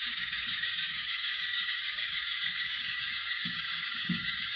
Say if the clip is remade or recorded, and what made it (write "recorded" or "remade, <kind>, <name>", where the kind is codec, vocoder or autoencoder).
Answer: remade, codec, DAC